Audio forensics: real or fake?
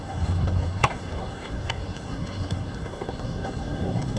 fake